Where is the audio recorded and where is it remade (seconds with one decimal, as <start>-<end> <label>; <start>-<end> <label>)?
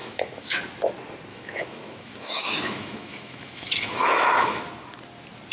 0.0-0.6 remade; 0.6-1.3 recorded; 1.3-4.6 remade; 4.6-5.5 recorded